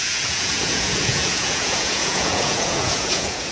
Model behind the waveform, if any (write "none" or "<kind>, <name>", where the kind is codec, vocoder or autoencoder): vocoder, Vocos